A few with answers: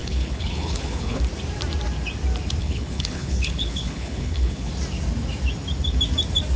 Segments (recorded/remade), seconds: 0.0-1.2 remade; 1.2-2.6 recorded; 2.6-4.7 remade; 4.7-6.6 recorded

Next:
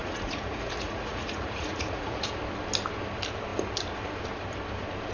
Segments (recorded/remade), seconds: 0.0-2.3 remade; 2.3-5.1 recorded

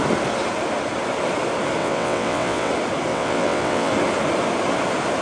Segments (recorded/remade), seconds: 0.0-1.8 recorded; 1.8-2.7 remade; 2.7-3.1 recorded; 3.1-3.9 remade; 3.9-5.2 recorded

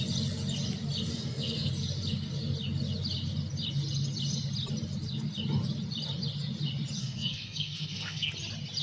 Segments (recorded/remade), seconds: 0.0-1.1 recorded; 1.1-1.7 remade; 1.7-7.0 recorded; 7.0-8.3 remade; 8.3-8.8 recorded

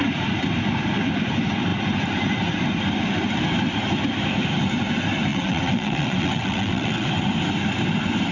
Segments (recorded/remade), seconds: 0.0-5.3 recorded; 5.3-7.1 remade; 7.1-8.3 recorded

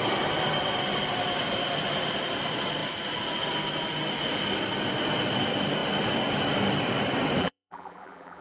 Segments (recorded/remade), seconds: 0.0-7.4 recorded; 7.4-8.4 remade

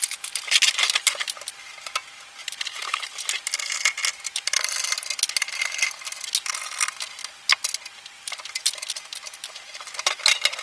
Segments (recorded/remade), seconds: 0.0-10.6 recorded